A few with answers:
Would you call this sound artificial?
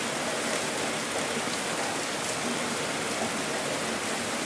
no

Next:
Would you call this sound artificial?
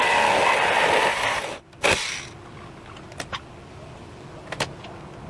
no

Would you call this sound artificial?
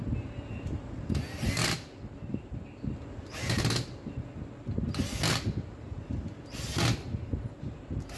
no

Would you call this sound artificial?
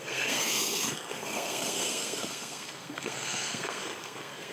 yes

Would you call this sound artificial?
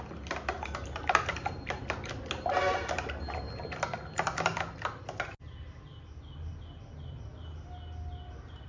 no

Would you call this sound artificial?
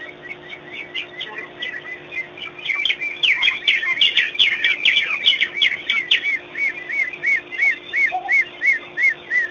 no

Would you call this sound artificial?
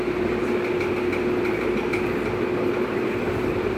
no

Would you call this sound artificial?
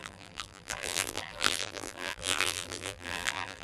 yes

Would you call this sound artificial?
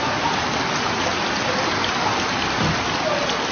no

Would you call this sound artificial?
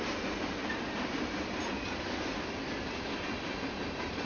no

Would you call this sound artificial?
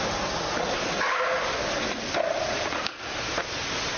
no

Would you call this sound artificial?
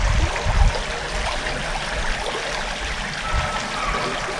no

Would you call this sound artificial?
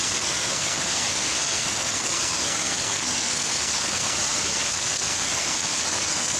yes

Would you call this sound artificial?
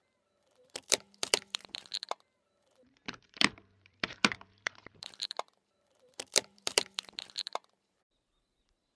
yes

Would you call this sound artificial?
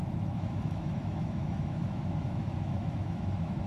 yes